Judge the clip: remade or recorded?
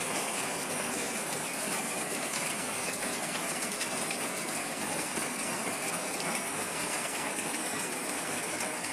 remade